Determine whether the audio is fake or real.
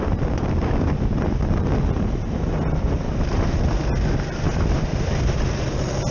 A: real